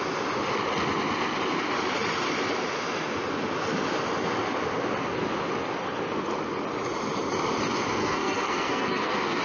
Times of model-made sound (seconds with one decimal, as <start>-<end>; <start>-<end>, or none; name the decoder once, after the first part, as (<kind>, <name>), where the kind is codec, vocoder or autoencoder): 8.0-9.4 (codec, SNAC)